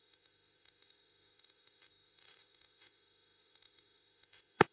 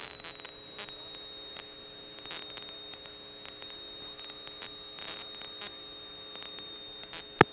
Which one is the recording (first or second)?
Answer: second